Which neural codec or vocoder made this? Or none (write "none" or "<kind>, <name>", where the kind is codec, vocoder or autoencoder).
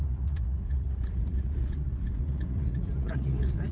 vocoder, Vocos